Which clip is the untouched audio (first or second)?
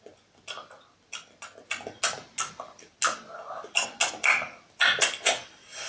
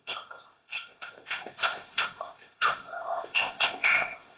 first